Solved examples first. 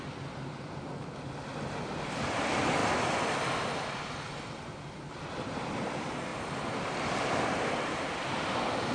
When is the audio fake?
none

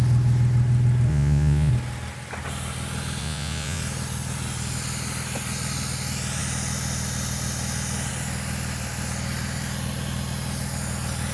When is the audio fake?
1.1-1.7 (vocoder, Vocos); 3.2-3.8

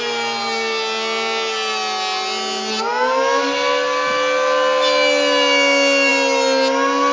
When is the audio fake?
none

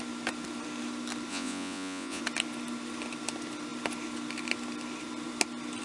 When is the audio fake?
1.3-2.2 (vocoder, Vocos)

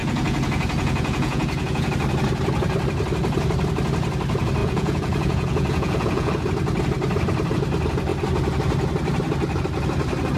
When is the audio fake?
0.0-1.9 (vocoder, Vocos); 4.6-6.3